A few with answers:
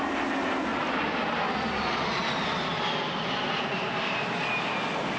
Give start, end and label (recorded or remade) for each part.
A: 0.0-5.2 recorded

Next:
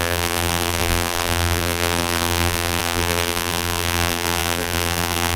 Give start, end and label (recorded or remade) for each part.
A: 0.0-5.4 remade

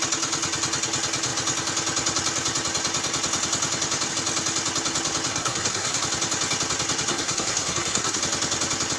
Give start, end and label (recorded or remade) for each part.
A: 0.0-5.3 recorded; 5.3-6.0 remade; 6.0-7.1 recorded; 7.1-8.2 remade; 8.2-9.0 recorded

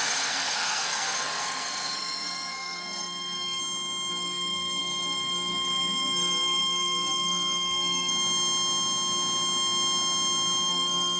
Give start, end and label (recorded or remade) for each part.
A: 0.0-3.6 remade; 3.6-4.1 recorded; 4.1-8.1 remade; 8.1-10.7 recorded; 10.7-11.2 remade

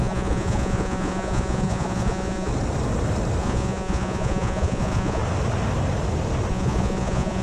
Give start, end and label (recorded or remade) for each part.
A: 0.0-2.5 remade; 2.5-3.4 recorded; 3.4-5.2 remade; 5.2-6.5 recorded; 6.5-7.4 remade